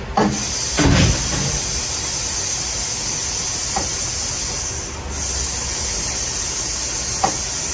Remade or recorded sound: recorded